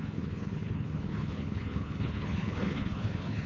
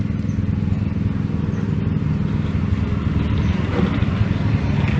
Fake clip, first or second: first